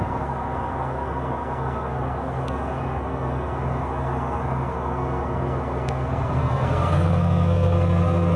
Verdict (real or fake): fake